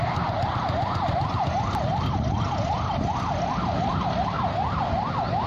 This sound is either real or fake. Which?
real